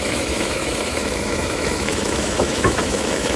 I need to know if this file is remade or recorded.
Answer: remade